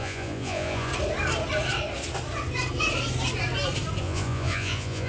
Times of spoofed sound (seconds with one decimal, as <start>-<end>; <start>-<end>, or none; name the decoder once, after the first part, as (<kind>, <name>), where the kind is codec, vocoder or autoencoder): 0.0-0.9 (vocoder, Vocos); 4.0-5.1